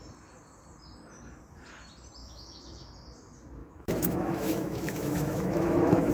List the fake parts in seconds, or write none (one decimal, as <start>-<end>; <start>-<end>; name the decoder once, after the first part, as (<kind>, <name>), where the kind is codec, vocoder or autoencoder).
2.2-2.9 (autoencoder, DAC-VAE); 3.6-6.1